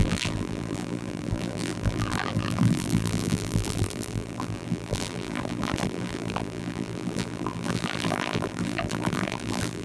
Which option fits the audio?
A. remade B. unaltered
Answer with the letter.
A